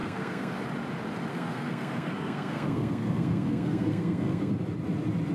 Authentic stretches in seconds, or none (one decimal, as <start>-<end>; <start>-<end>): 0.6-1.3; 4.5-5.3